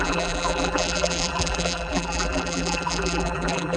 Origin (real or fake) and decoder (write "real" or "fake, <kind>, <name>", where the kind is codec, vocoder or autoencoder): fake, vocoder, BigVGAN v2